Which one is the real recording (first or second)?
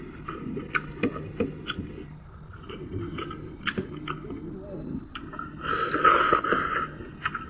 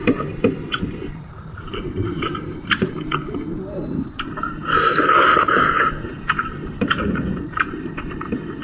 first